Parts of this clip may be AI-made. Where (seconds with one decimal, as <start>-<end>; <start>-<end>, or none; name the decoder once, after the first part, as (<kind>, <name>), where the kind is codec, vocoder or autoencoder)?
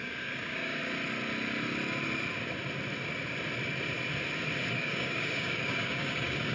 0.0-0.8 (codec, DAC); 4.7-6.5